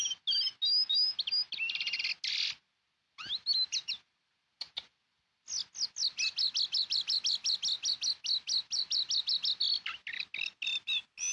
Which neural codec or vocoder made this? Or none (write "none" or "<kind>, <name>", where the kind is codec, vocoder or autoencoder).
none